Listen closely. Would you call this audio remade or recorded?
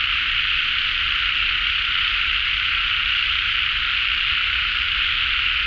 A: recorded